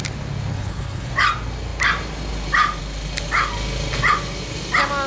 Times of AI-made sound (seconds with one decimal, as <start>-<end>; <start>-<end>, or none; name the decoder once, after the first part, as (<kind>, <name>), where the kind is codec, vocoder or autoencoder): 0.5-1.1 (codec, HILCodec)